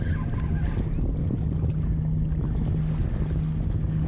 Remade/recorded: recorded